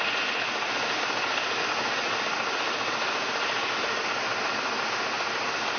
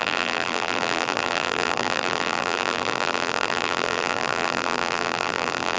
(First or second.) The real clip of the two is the first